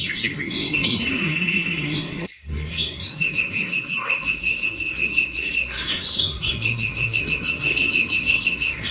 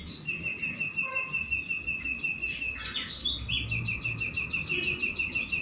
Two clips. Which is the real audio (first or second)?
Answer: second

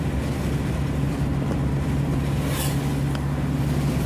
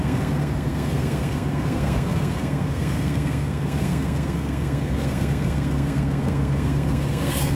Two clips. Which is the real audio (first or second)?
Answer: first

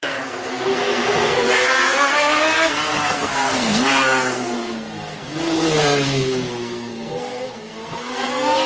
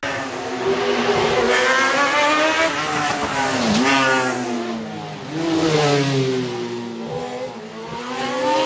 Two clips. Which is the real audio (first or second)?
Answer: second